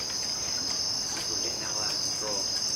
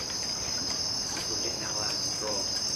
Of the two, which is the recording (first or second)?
first